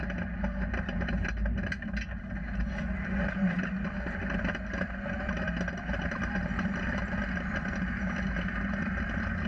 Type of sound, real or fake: real